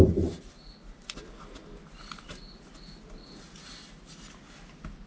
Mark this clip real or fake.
real